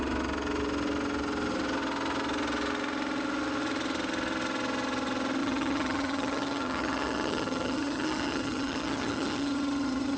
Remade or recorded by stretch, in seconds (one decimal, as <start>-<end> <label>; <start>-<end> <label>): 0.0-5.4 recorded; 5.4-10.2 remade